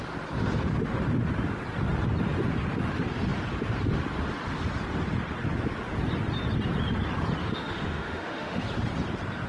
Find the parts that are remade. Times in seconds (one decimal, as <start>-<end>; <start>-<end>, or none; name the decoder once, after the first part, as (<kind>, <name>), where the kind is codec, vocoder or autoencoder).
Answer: 7.4-8.6 (autoencoder, DAC-VAE)